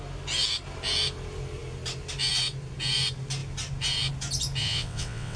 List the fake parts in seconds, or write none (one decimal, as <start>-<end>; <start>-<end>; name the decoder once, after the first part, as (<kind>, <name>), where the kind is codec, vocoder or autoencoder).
4.6-5.4 (vocoder, WaveNeXt)